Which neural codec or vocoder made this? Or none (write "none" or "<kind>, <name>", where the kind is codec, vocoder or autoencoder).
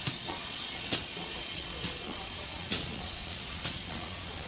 vocoder, Vocos